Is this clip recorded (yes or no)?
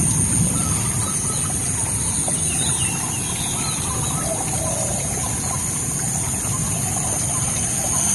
yes